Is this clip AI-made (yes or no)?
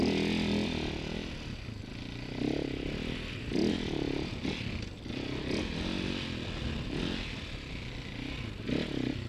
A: no